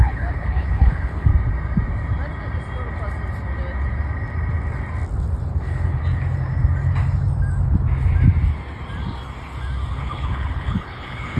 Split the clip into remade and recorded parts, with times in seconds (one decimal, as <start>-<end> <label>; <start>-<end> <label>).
0.0-1.3 remade; 1.3-5.6 recorded; 5.6-6.0 remade; 6.0-9.9 recorded; 9.9-11.4 remade